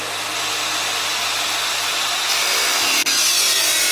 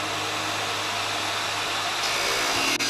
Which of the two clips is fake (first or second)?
first